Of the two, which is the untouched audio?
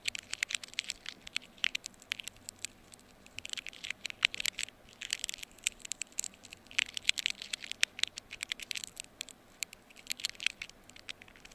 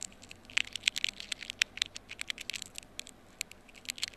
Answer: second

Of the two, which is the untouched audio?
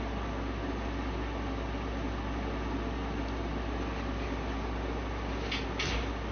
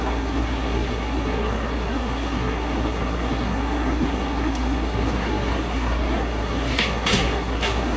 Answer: first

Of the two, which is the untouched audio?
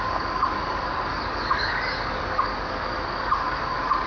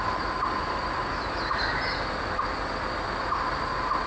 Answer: second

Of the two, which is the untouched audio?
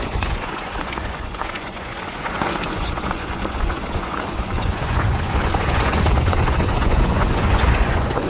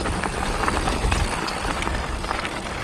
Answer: second